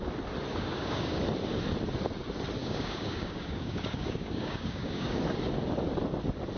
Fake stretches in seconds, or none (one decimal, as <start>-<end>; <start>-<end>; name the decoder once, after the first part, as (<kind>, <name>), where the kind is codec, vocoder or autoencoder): 0.5-1.2 (codec, DAC); 2.6-5.2